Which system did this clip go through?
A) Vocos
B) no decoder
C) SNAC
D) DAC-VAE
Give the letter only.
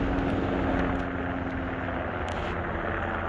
B